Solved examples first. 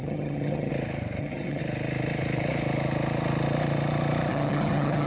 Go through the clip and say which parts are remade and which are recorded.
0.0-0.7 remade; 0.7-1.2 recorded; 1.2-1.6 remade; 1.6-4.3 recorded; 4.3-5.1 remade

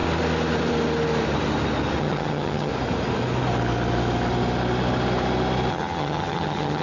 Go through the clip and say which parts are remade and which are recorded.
0.0-2.0 recorded; 2.0-2.7 remade; 2.7-5.7 recorded; 5.7-6.8 remade